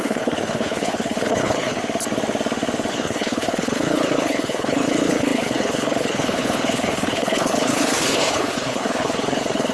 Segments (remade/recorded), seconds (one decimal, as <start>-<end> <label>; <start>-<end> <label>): 0.0-1.8 remade; 1.8-2.9 recorded; 2.9-9.7 remade